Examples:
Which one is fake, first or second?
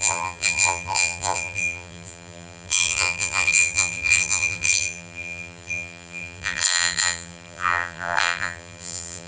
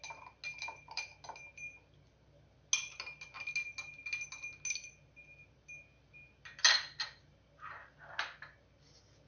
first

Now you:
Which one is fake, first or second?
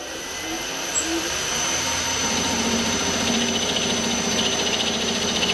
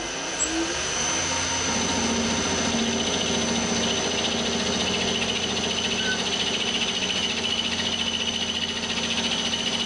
first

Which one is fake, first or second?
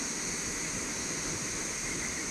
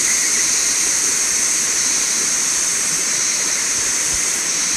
second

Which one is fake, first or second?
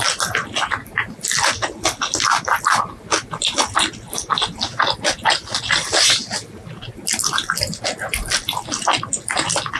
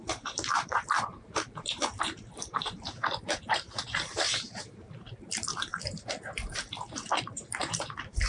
second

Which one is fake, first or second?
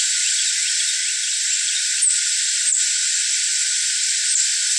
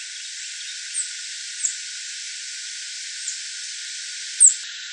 first